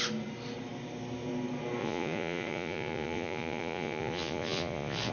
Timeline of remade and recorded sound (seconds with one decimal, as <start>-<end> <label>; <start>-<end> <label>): 0.0-1.8 recorded; 1.8-5.1 remade